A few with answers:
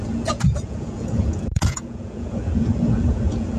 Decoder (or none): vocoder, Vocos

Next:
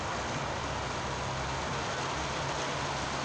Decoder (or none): none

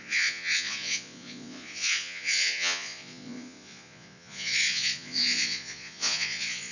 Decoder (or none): vocoder, Vocos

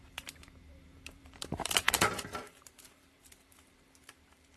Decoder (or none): vocoder, BigVGAN v2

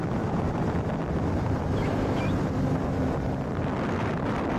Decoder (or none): none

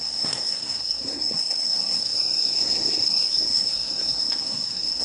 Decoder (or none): codec, SNAC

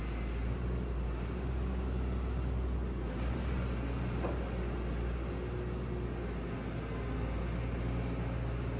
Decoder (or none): none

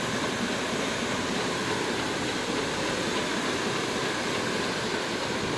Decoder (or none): none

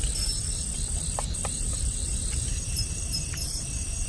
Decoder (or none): vocoder, BigVGAN v2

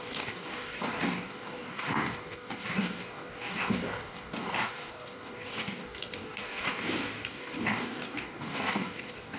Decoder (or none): codec, DAC